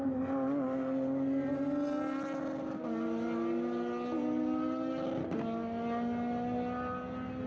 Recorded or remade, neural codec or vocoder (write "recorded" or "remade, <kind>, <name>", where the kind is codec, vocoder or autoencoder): recorded